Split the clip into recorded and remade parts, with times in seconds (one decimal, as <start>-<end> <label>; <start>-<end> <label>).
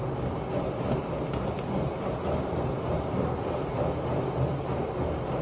0.0-5.4 recorded